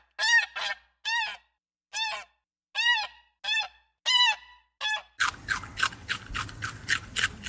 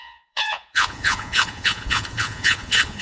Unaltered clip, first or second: first